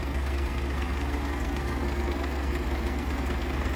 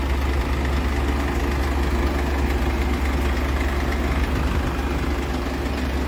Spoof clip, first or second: first